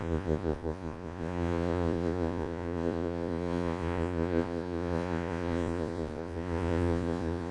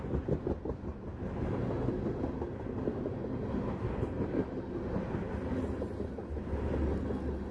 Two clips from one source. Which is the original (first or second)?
second